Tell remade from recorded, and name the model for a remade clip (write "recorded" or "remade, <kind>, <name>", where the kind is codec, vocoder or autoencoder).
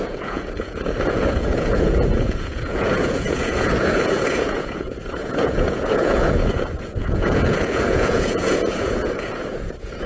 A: remade, vocoder, Vocos